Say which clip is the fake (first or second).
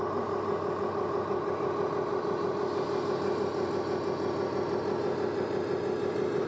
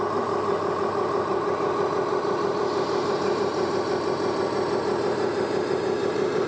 second